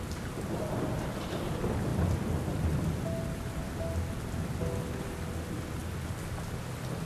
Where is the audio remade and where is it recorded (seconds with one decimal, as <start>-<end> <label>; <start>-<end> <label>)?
0.0-7.1 recorded